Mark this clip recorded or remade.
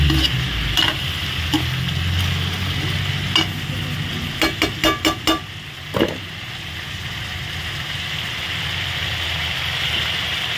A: recorded